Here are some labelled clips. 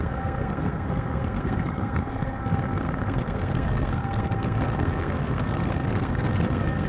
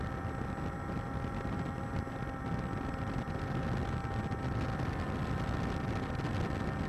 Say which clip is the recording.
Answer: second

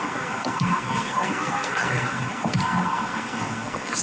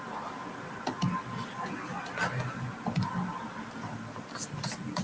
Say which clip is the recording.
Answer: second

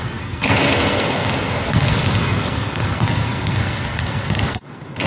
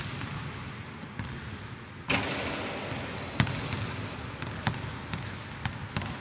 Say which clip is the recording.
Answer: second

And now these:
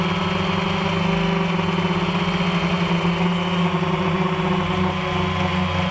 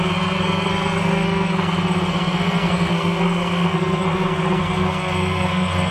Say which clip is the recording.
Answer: first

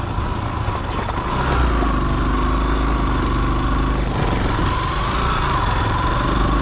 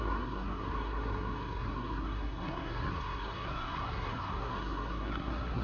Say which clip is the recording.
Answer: first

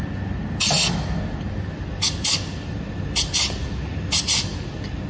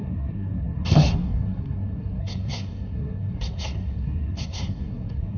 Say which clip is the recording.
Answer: first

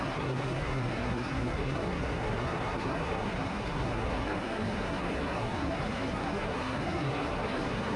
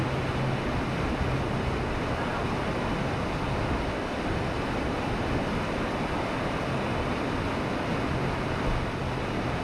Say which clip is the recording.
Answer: second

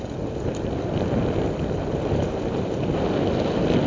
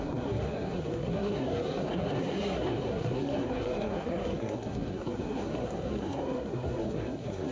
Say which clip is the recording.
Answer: first